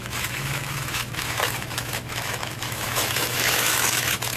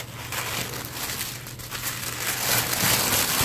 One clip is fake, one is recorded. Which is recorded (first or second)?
second